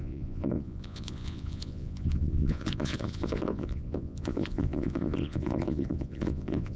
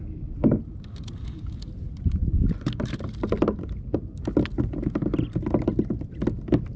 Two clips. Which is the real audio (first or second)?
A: second